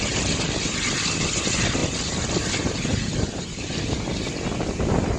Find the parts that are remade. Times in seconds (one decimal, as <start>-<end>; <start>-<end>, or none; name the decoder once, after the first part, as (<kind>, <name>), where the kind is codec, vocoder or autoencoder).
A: none

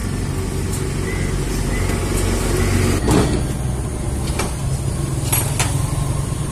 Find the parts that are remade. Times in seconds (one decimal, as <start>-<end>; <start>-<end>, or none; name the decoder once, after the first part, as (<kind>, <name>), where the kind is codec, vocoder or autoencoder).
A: none

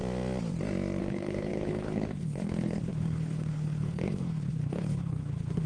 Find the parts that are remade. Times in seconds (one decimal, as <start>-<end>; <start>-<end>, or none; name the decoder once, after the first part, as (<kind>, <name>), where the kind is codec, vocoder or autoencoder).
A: 1.0-5.7 (codec, HILCodec)